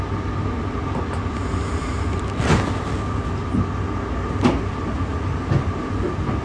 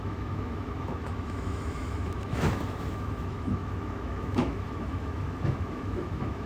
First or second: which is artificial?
second